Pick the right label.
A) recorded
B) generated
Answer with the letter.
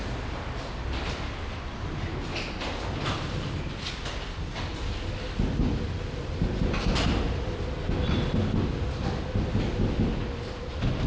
A